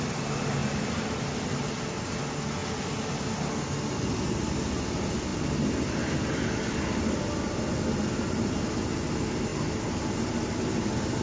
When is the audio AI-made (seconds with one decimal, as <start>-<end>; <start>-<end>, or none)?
0.6-1.5; 5.3-8.5